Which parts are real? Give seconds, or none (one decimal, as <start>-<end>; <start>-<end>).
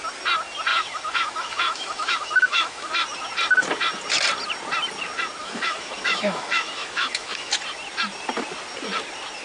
0.0-0.7; 2.9-5.4; 7.6-9.4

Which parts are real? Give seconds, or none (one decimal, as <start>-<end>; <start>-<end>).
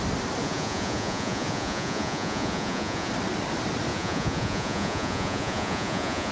0.0-0.4; 3.1-3.9